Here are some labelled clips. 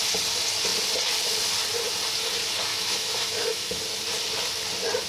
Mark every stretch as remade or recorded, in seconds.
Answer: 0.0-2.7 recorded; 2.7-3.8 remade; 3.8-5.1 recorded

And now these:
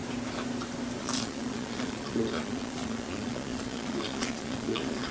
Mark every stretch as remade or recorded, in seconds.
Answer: 0.0-1.0 recorded; 1.0-5.1 remade

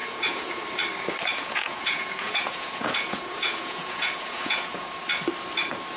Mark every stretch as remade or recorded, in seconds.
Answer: 0.0-0.6 remade; 0.6-1.4 recorded; 1.4-5.0 remade; 5.0-6.0 recorded

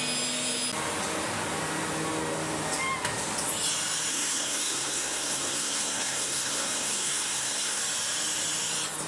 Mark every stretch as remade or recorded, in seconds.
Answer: 0.0-4.1 recorded; 4.1-7.8 remade; 7.8-9.1 recorded

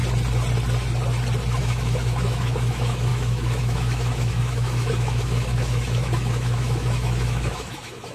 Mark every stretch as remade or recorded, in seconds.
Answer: 0.0-1.6 recorded; 1.6-8.1 remade

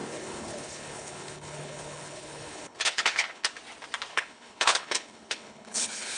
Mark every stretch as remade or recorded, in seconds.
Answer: 0.0-3.5 remade; 3.5-4.1 recorded; 4.1-6.2 remade

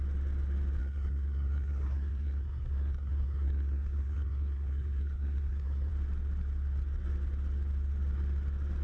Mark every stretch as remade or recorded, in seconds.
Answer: 0.0-0.8 recorded; 0.8-5.9 remade; 5.9-8.8 recorded